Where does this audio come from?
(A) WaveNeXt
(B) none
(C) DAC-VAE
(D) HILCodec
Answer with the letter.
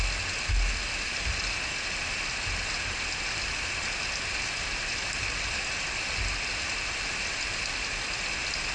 B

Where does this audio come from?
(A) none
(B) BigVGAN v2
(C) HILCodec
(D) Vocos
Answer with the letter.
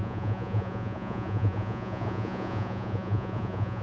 D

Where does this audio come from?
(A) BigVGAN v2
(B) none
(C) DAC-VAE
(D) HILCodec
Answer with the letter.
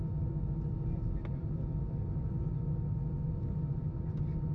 B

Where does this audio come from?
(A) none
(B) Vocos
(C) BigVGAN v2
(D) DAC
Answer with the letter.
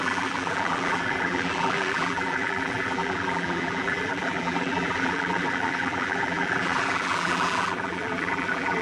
C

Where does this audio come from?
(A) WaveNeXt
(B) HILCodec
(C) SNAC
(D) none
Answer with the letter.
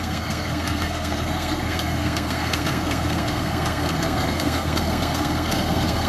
C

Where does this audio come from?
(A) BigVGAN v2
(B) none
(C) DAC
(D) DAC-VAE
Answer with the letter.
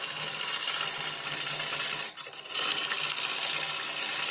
B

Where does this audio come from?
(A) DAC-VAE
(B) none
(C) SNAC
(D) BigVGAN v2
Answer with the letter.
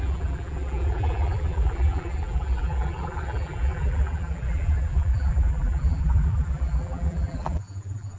D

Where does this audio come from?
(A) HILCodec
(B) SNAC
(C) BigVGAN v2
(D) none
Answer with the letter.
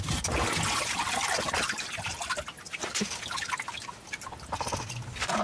D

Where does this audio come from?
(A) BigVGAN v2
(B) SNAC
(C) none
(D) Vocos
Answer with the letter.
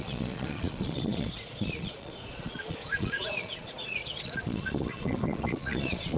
D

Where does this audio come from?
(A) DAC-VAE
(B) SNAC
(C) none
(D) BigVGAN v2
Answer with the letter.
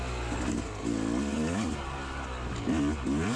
C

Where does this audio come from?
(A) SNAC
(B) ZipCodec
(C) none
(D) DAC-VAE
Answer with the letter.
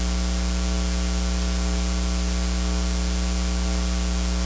C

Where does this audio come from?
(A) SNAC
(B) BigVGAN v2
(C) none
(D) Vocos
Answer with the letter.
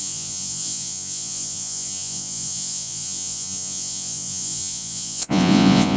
D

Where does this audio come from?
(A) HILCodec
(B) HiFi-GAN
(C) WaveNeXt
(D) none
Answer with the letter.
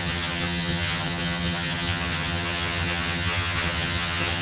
B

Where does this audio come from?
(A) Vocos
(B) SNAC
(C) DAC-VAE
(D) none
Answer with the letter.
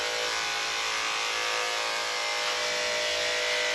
D